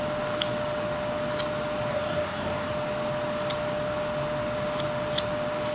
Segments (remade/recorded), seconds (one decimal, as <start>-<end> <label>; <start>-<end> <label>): 0.0-1.9 recorded; 1.9-2.7 remade; 2.7-5.7 recorded